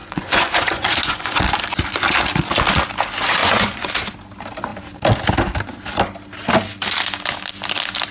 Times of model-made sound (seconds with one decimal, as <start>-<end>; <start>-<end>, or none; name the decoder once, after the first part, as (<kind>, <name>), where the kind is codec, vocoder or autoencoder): 0.0-1.4 (vocoder, Vocos); 3.4-3.9